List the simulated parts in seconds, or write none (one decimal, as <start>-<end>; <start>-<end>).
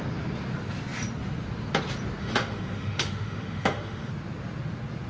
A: 2.2-4.1